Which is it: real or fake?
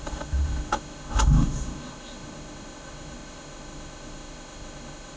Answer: fake